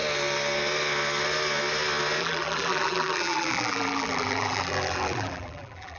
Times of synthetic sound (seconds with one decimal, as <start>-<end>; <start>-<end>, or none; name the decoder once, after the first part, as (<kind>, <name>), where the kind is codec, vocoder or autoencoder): 2.2-6.0 (vocoder, BigVGAN v2)